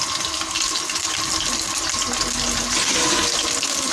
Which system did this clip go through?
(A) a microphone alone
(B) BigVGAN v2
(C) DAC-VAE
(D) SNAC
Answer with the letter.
A